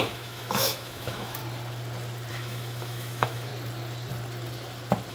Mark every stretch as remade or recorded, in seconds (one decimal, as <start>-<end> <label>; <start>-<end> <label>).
0.0-1.4 remade; 1.4-2.3 recorded; 2.3-3.5 remade; 3.5-5.1 recorded